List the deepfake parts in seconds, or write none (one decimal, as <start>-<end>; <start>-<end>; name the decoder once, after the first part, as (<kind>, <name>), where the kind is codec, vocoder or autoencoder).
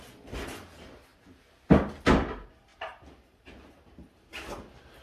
2.7-4.3 (vocoder, BigVGAN v2)